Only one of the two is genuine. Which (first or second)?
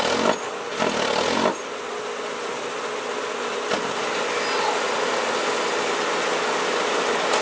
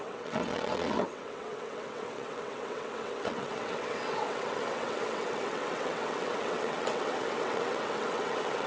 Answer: first